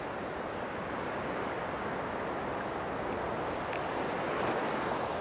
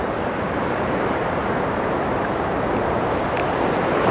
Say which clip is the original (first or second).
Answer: first